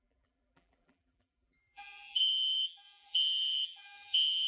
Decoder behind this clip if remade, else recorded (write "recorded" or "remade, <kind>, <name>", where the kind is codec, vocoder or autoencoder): remade, vocoder, BigVGAN v2